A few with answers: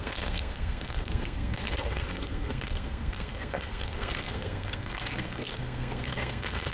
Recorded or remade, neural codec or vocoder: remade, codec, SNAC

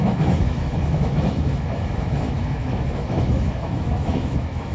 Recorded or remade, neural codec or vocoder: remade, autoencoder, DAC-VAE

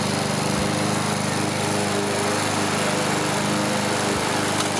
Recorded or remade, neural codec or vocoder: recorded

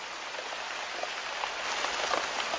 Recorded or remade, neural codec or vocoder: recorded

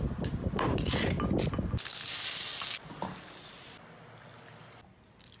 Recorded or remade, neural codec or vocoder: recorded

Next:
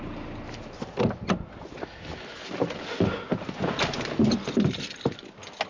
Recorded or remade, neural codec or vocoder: recorded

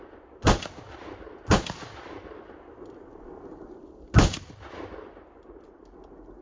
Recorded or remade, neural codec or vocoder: recorded